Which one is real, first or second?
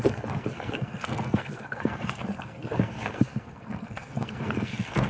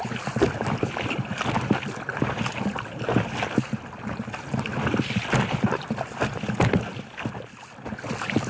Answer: second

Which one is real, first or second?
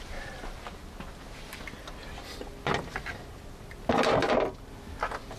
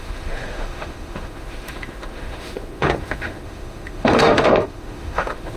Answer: first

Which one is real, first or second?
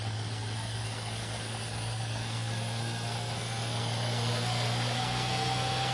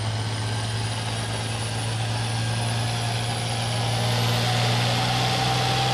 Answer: second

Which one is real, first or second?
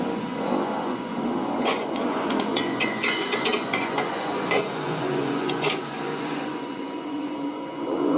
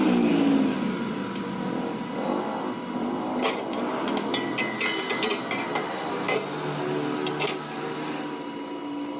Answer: second